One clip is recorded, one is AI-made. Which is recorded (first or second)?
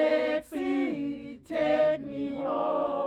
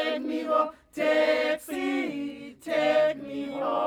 second